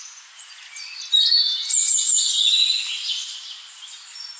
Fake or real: real